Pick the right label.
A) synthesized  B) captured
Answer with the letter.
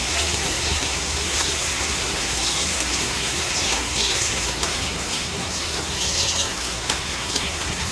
A